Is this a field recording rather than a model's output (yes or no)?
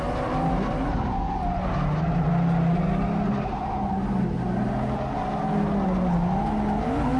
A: yes